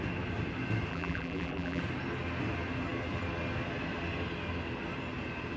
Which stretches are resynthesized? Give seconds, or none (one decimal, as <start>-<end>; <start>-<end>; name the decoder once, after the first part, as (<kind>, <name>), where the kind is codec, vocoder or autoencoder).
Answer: 0.9-1.8 (vocoder, BigVGAN v2)